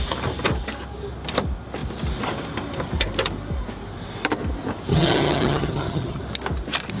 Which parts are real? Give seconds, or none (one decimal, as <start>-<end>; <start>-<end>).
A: 0.0-4.9; 6.2-7.0